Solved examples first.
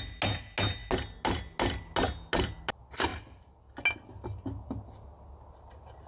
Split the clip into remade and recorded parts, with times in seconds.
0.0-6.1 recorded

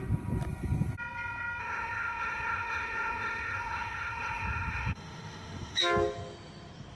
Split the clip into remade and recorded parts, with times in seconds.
0.0-1.6 recorded; 1.6-5.8 remade; 5.8-7.0 recorded

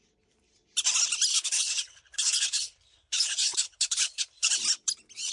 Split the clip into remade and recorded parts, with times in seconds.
0.0-1.3 recorded; 1.3-4.5 remade; 4.5-5.3 recorded

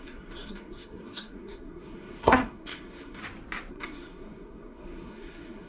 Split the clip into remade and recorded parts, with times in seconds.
0.0-3.2 remade; 3.2-3.7 recorded; 3.7-5.7 remade

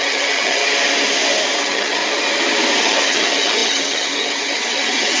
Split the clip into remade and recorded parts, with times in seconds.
0.0-0.6 remade; 0.6-1.6 recorded; 1.6-2.0 remade; 2.0-2.8 recorded; 2.8-5.2 remade

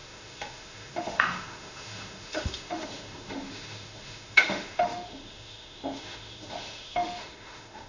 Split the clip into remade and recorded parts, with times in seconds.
0.0-7.9 remade